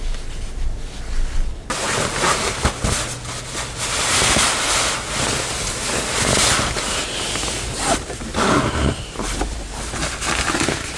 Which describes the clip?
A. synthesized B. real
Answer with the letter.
B